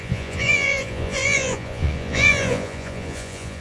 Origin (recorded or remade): remade